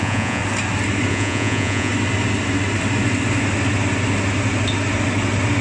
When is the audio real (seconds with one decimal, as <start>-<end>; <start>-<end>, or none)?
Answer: 0.4-1.1; 1.9-5.6